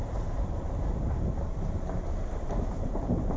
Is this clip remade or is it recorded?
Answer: remade